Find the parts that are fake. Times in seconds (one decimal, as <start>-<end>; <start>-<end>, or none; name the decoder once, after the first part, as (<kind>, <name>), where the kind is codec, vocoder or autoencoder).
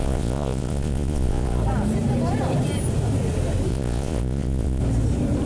0.0-1.6 (vocoder, Vocos); 3.7-4.8